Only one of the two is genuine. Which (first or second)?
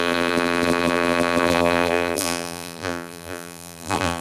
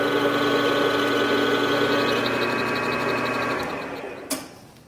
second